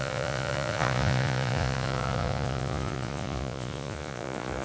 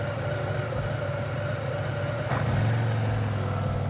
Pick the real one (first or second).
second